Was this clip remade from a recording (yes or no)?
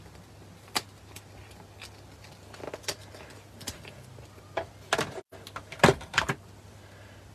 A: no